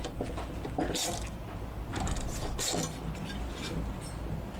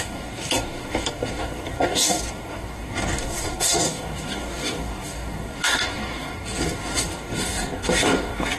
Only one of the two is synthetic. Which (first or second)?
second